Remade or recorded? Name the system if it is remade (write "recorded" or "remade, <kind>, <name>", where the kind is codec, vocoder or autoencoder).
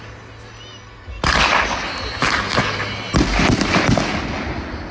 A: recorded